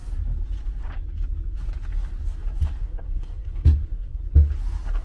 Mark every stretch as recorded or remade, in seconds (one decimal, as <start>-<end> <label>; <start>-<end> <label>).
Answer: 0.0-2.8 recorded; 2.8-4.2 remade; 4.2-5.0 recorded